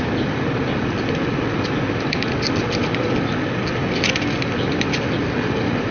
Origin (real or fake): real